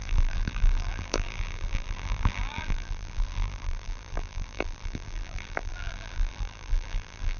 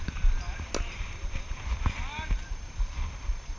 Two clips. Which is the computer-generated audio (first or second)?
first